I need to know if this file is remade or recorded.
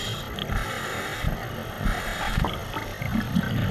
remade